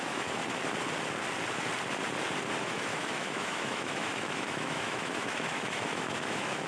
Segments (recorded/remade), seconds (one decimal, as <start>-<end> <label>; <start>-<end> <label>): 0.0-0.4 remade; 0.4-2.6 recorded; 2.6-6.7 remade